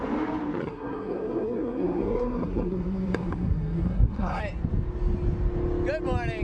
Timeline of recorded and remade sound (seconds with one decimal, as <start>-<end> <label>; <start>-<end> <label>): 0.0-0.6 recorded; 0.6-4.4 remade; 4.4-6.4 recorded